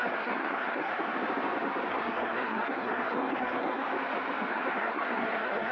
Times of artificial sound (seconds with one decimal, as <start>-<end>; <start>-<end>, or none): 0.0-0.9; 1.9-3.9; 4.5-5.7